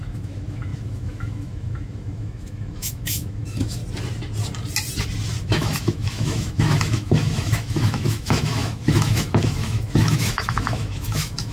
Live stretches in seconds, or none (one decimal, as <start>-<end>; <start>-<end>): 3.8-5.4